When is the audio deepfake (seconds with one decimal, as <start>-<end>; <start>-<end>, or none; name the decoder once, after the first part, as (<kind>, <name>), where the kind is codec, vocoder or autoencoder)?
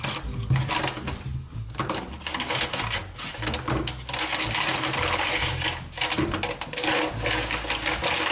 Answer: none